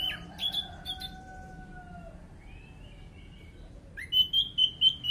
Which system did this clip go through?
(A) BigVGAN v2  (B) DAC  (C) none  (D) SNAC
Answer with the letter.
C